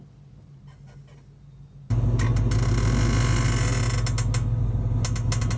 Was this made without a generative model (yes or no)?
yes